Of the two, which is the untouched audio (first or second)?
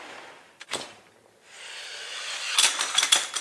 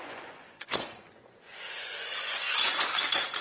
first